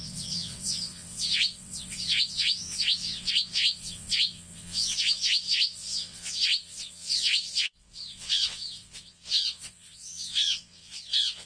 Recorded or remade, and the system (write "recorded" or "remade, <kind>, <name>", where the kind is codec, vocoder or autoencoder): remade, vocoder, WaveNeXt